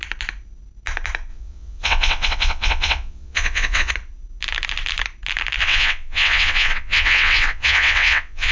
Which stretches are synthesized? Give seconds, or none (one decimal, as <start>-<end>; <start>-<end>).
1.3-3.9; 5.6-8.5

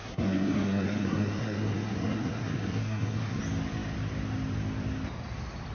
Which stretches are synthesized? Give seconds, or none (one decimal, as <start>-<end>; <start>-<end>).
0.0-3.4